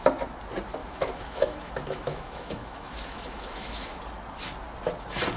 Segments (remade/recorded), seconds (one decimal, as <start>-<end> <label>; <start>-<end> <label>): 0.0-0.8 recorded; 0.8-4.0 remade; 4.0-5.4 recorded